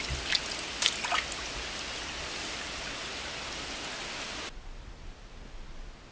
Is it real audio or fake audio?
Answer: real